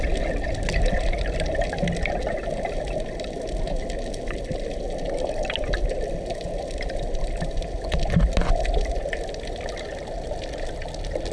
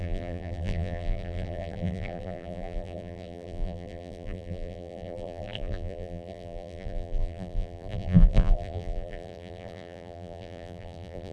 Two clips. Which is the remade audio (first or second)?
second